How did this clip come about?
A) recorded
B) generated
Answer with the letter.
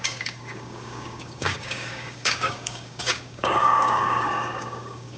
B